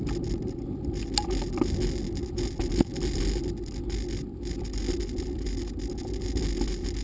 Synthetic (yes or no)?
no